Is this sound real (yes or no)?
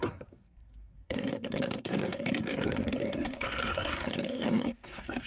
no